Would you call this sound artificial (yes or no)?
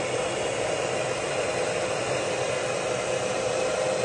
no